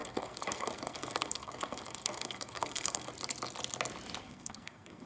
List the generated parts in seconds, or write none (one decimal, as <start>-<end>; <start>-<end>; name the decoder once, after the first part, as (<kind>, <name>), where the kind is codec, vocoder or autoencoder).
0.0-3.1 (codec, SNAC); 4.2-5.1